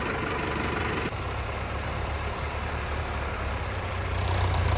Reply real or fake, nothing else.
fake